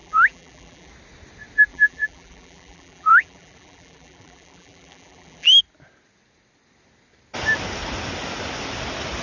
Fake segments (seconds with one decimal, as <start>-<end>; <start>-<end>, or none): 0.0-0.9; 1.7-5.6